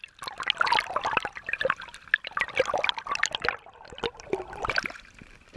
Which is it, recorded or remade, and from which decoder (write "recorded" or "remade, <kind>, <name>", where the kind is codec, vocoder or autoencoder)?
recorded